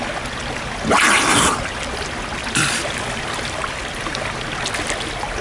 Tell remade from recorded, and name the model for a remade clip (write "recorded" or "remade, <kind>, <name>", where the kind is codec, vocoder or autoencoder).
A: recorded